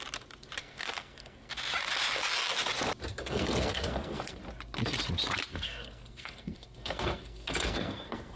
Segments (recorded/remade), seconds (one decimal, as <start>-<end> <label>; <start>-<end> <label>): 0.0-0.6 recorded; 0.6-1.5 remade; 1.5-3.1 recorded; 3.1-4.4 remade; 4.4-5.5 recorded; 5.5-8.4 remade